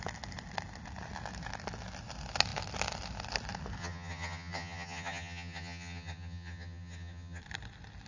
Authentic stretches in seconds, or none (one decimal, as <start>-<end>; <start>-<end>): 0.0-3.8; 7.4-8.1